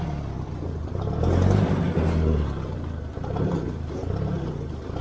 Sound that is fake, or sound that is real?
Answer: real